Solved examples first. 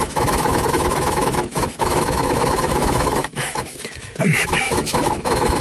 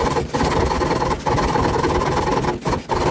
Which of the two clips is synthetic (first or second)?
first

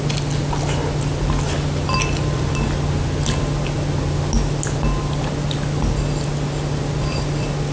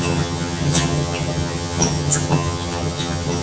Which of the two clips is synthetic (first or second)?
second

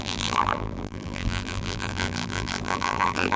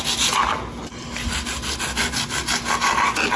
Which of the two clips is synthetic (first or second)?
first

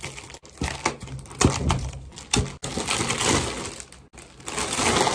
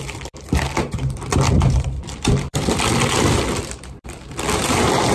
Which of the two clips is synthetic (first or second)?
second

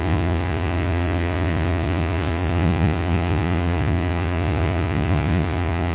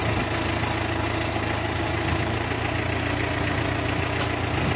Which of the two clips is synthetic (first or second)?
first